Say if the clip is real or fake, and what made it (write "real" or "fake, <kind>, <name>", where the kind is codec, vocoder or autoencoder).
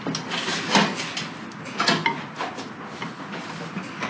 real